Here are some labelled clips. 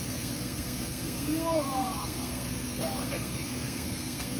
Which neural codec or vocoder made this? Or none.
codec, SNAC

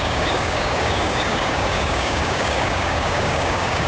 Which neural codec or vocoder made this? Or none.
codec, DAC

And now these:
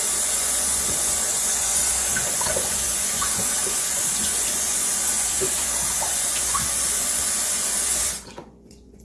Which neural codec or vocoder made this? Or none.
vocoder, Vocos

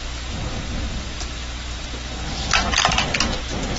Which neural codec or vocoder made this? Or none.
none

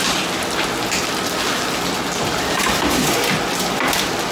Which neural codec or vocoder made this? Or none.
none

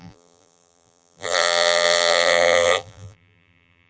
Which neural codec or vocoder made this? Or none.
vocoder, BigVGAN v2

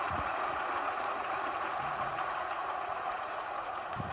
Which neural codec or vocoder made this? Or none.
vocoder, Vocos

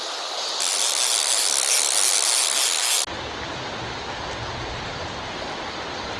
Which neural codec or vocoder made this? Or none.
none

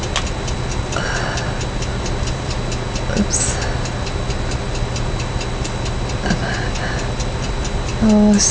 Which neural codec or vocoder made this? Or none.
none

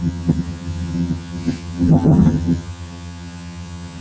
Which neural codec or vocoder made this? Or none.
vocoder, HiFi-GAN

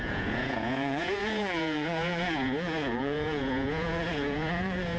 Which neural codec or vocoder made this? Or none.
vocoder, Vocos